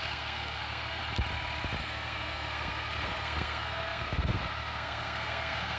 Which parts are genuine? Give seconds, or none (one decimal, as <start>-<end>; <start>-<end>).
1.0-1.8